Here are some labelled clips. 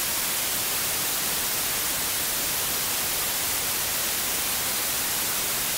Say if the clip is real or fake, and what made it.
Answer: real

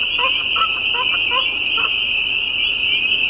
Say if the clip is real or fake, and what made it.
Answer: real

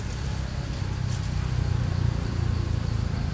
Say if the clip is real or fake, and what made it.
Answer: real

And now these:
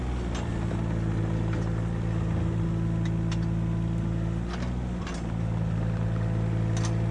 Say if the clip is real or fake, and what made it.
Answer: real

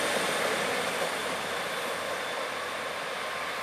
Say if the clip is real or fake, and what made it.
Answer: real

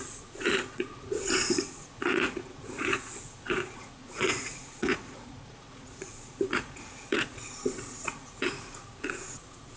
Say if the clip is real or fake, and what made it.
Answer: fake, vocoder, Vocos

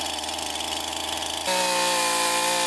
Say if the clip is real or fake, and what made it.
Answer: real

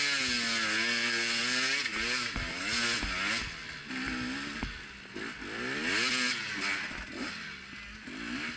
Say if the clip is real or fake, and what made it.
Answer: real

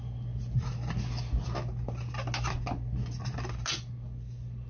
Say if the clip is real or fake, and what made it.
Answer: real